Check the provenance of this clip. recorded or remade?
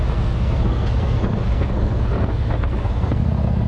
remade